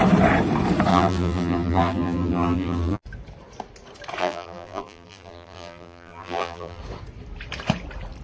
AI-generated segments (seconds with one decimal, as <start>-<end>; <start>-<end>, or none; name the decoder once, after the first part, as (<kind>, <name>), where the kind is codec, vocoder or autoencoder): 0.9-3.0 (vocoder, BigVGAN v2); 4.2-6.8